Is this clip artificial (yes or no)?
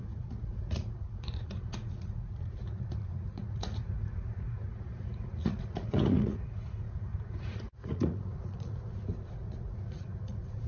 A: yes